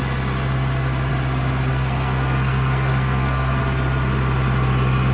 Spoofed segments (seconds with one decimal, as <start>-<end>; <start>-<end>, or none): 1.7-3.6